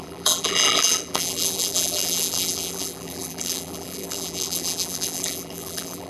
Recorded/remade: remade